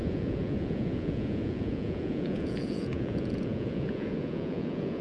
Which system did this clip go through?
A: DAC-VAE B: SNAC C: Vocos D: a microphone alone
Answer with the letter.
C